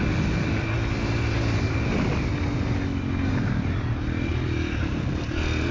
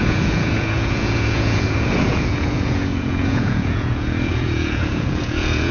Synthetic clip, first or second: second